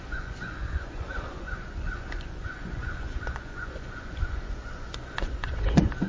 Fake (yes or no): yes